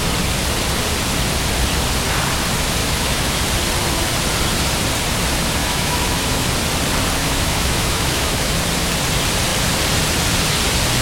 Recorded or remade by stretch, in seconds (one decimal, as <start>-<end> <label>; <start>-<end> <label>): 0.0-2.8 recorded; 2.8-3.4 remade; 3.4-5.6 recorded; 5.6-6.5 remade; 6.5-7.2 recorded; 7.2-8.5 remade; 8.5-11.0 recorded